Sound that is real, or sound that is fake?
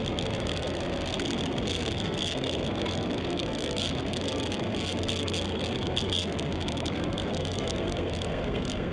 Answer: fake